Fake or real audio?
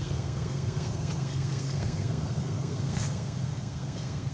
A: fake